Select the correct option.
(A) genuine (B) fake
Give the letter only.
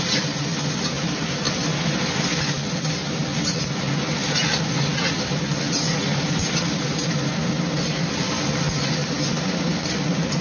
A